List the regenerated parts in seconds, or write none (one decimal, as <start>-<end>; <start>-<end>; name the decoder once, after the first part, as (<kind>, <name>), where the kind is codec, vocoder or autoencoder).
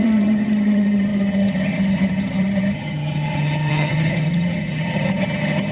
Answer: 0.0-5.7 (vocoder, HiFi-GAN)